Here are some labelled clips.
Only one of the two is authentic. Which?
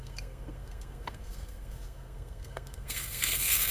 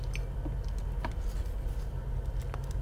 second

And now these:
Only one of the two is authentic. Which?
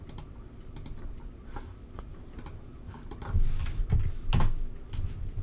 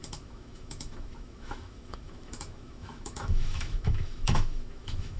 first